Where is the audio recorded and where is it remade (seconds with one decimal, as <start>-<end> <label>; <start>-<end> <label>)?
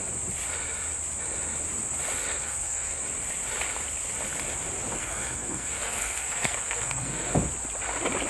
0.0-2.4 recorded; 2.4-3.0 remade; 3.0-5.0 recorded; 5.0-7.3 remade; 7.3-8.3 recorded